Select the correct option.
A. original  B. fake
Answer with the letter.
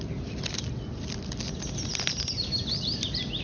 A